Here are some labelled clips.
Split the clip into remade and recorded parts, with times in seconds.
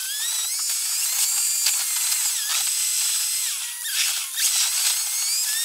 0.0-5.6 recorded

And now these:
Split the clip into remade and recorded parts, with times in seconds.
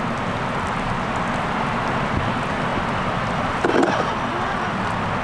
0.0-5.2 recorded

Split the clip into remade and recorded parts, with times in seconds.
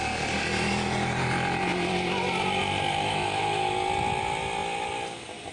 0.0-3.1 recorded; 3.1-3.7 remade; 3.7-5.5 recorded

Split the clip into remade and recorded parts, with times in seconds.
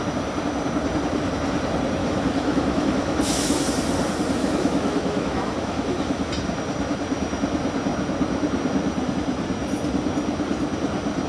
0.0-2.0 recorded; 2.0-3.6 remade; 3.6-4.4 recorded; 4.4-6.3 remade; 6.3-11.3 recorded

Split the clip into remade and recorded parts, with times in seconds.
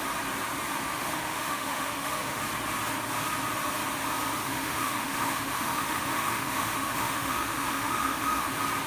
0.0-0.9 recorded; 0.9-2.4 remade; 2.4-4.4 recorded; 4.4-8.5 remade; 8.5-8.9 recorded